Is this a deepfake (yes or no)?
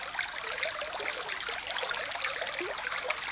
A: no